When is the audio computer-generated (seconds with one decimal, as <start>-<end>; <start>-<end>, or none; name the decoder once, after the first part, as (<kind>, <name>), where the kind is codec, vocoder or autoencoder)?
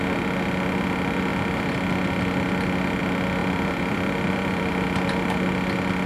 3.4-4.7 (vocoder, BigVGAN v2)